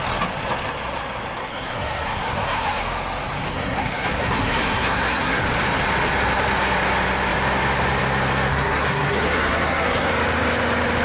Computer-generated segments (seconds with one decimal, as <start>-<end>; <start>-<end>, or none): 1.4-2.8; 3.5-5.4; 8.5-10.1